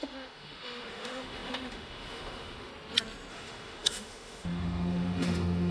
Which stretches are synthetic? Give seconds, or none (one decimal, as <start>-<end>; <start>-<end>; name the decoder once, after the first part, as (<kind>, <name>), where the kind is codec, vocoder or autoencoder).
0.0-2.7 (autoencoder, DAC-VAE); 3.3-5.7